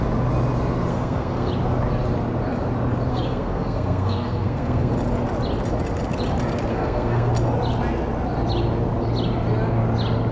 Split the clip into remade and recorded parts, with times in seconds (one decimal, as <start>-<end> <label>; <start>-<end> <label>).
0.0-0.9 recorded; 0.9-1.5 remade; 1.5-3.1 recorded; 3.1-4.9 remade; 4.9-6.7 recorded; 6.7-7.3 remade; 7.3-10.3 recorded